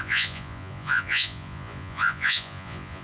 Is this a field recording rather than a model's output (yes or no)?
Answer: no